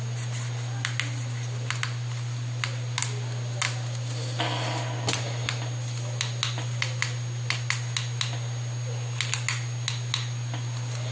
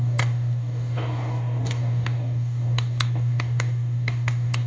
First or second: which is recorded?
first